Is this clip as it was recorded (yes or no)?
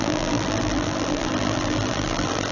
no